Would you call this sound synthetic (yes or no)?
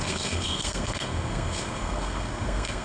yes